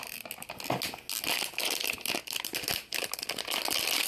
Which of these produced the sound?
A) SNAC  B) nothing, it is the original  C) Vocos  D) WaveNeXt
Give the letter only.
B